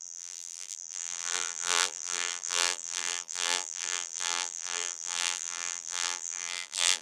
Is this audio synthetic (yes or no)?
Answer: yes